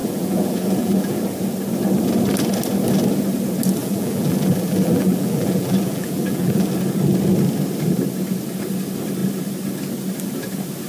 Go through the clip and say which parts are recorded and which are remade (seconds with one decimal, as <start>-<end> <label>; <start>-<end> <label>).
0.0-1.2 remade; 1.2-3.8 recorded; 3.8-6.7 remade; 6.7-10.9 recorded